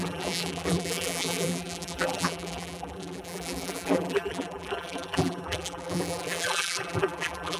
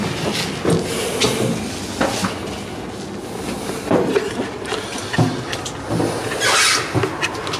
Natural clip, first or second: second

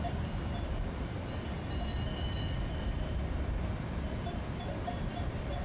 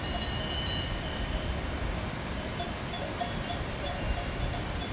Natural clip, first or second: second